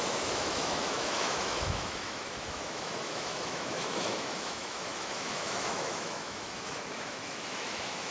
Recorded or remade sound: remade